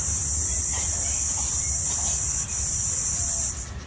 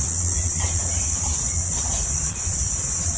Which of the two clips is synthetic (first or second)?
second